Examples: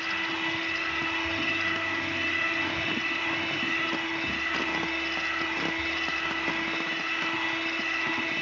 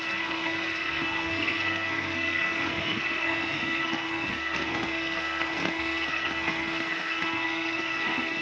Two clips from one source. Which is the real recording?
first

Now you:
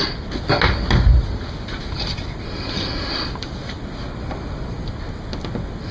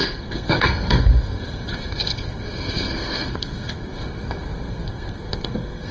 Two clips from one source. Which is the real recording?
first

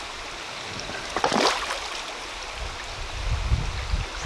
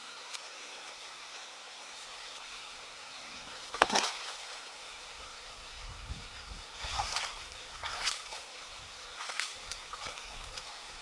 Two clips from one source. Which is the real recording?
first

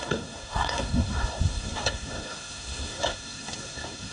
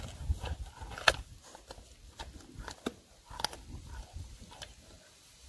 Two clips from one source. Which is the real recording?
second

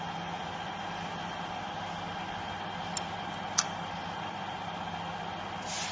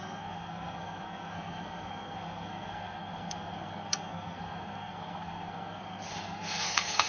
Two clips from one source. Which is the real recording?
first